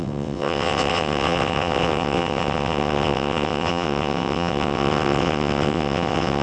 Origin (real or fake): fake